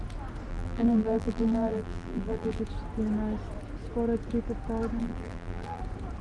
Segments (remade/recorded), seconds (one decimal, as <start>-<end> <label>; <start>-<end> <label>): 0.0-0.5 recorded; 0.5-2.6 remade; 2.6-5.0 recorded; 5.0-5.8 remade; 5.8-6.2 recorded